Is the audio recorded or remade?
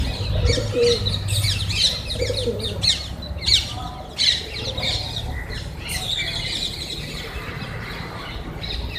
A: recorded